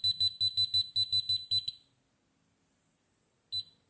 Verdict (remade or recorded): recorded